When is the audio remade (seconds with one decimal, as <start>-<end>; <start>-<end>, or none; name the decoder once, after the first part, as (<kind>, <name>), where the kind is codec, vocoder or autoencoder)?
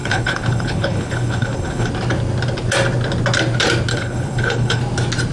0.0-1.9 (codec, HILCodec); 3.9-4.8